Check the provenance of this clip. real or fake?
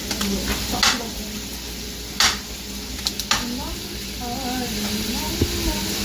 real